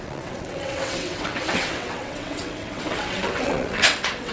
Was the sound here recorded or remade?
remade